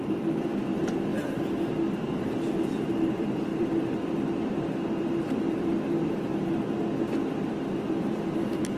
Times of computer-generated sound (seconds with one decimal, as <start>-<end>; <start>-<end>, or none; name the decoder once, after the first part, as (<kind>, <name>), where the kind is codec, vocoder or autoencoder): 0.0-1.1 (vocoder, BigVGAN v2); 2.8-6.3; 7.1-8.8